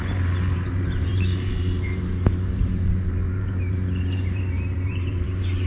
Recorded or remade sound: remade